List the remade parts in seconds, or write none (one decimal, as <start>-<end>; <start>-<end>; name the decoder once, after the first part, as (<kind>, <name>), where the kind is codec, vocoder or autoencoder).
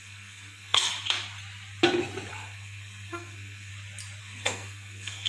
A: 0.0-0.9 (codec, SNAC); 2.3-3.7; 4.2-5.3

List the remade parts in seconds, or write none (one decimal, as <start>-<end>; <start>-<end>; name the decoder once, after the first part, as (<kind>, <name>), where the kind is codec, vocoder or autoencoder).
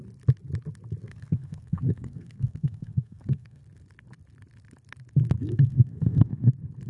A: 1.0-3.6 (codec, SNAC); 5.4-6.5